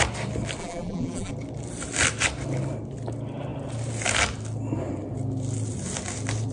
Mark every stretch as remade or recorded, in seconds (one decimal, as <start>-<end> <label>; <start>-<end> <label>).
0.0-0.6 recorded; 0.6-1.3 remade; 1.3-6.5 recorded